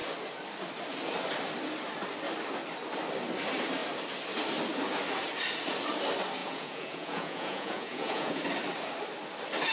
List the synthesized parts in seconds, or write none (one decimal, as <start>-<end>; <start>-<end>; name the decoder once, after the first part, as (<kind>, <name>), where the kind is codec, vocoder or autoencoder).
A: 6.4-8.4 (vocoder, Vocos)